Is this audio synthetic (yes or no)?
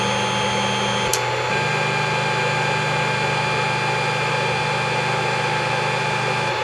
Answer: no